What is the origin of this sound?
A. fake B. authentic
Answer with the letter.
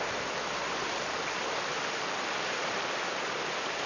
B